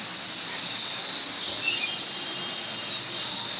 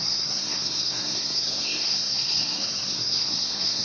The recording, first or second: first